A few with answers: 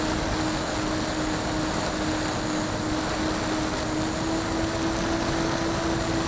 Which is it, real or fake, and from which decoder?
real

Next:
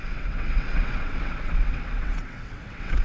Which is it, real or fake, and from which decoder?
fake, vocoder, WaveNeXt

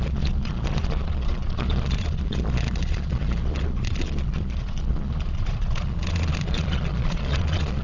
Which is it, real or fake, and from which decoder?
fake, vocoder, Vocos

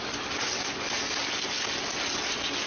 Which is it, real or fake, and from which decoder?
real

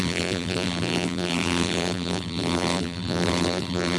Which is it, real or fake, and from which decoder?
fake, vocoder, BigVGAN v2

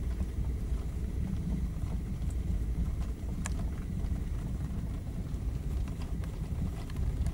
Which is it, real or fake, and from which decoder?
fake, vocoder, BigVGAN v2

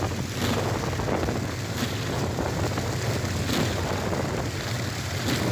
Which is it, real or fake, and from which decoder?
real